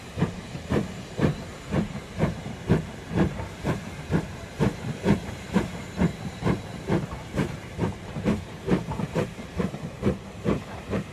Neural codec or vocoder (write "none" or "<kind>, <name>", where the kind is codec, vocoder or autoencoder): vocoder, BigVGAN v2